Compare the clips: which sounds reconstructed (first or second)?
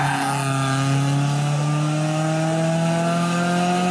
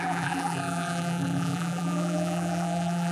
second